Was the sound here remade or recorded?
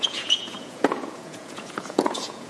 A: remade